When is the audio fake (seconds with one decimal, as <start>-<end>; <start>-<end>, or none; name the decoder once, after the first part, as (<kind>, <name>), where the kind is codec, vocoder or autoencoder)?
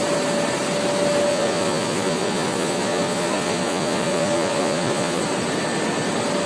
1.3-5.2 (vocoder, Vocos)